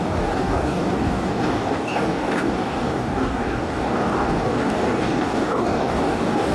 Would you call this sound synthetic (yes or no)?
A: yes